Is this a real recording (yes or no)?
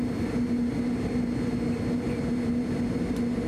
yes